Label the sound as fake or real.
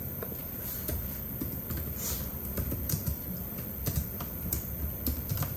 fake